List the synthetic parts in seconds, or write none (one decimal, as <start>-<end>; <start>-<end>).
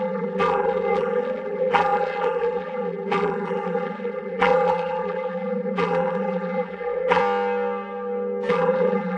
0.0-7.2; 8.5-9.2